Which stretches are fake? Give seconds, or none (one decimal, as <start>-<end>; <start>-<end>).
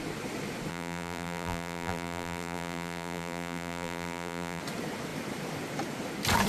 0.7-4.6